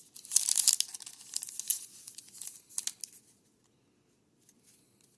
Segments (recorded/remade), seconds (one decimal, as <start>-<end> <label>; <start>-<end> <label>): 0.0-1.7 recorded; 1.7-2.4 remade; 2.4-5.2 recorded